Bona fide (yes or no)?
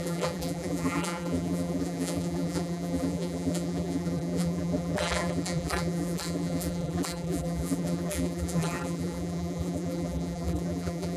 no